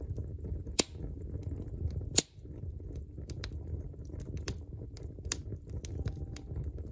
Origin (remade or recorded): recorded